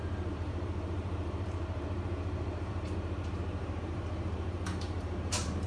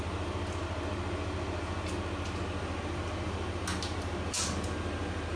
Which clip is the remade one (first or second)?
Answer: first